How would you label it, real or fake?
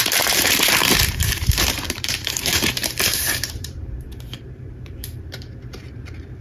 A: fake